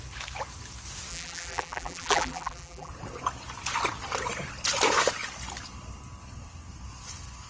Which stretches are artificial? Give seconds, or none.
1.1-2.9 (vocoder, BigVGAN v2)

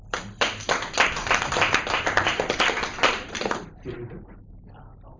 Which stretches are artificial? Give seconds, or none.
1.2-3.5 (vocoder, BigVGAN v2)

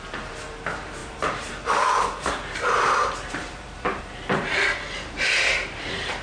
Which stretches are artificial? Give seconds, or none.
0.0-6.2 (vocoder, BigVGAN v2)

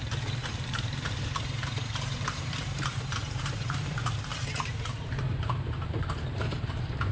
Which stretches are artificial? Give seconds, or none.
0.0-4.3 (vocoder, BigVGAN v2); 5.0-7.1

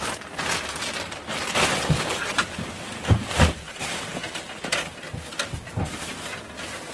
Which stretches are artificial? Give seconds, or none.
2.3-4.1 (vocoder, BigVGAN v2)

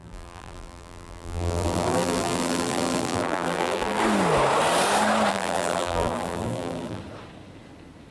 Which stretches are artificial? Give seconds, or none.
0.0-4.0 (vocoder, BigVGAN v2); 5.3-7.0

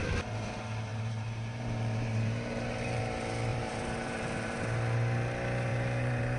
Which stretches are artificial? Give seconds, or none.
0.9-3.0 (vocoder, BigVGAN v2); 3.5-4.6; 5.7-6.4